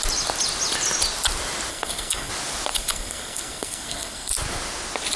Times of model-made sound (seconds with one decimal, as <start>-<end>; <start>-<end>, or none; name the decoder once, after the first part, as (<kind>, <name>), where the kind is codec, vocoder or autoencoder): 1.7-2.3 (codec, SNAC); 2.7-4.3